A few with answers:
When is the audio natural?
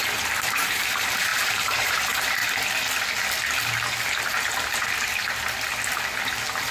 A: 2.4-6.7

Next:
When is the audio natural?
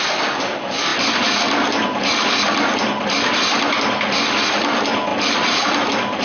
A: 0.0-6.2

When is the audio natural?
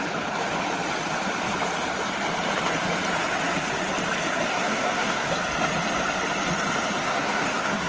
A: 0.0-4.5; 5.3-7.0